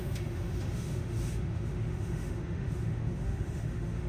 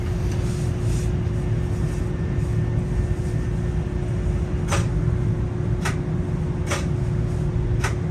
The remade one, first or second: first